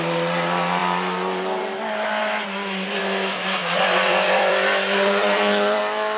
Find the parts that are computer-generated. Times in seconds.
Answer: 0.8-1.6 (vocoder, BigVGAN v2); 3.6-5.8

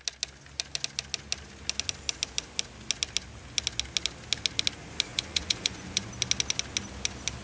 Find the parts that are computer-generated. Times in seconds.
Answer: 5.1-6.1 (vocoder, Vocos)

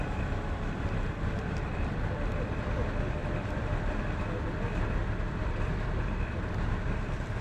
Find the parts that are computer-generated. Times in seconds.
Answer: 0.0-2.0 (vocoder, BigVGAN v2); 3.2-4.2; 5.0-7.4

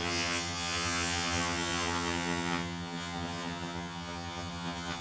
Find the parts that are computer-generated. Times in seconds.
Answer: 0.0-5.0 (vocoder, HiFi-GAN)

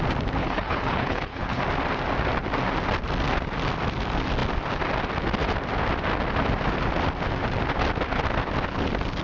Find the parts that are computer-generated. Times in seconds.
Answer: 0.4-1.6 (codec, HILCodec)